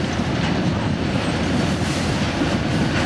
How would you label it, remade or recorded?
recorded